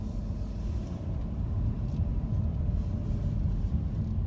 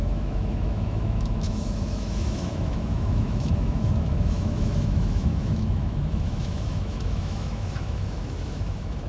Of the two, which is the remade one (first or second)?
second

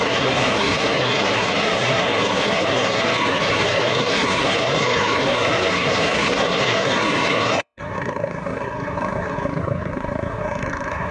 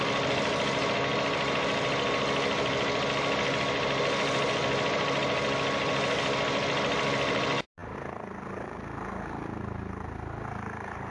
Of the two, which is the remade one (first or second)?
first